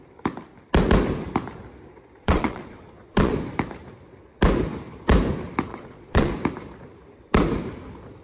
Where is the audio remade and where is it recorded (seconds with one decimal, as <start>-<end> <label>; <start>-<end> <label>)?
0.0-1.9 recorded; 1.9-3.3 remade; 3.3-5.7 recorded; 5.7-6.3 remade; 6.3-8.2 recorded